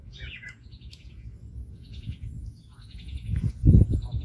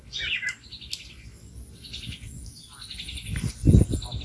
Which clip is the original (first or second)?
second